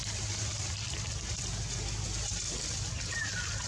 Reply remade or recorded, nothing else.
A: recorded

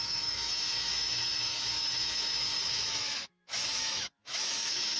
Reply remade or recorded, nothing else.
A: remade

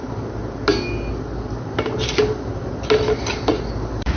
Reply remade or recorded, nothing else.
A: recorded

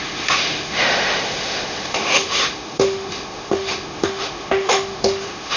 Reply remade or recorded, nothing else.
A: remade